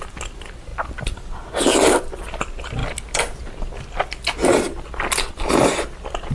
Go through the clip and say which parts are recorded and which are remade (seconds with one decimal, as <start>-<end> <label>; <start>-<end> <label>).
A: 0.0-6.3 recorded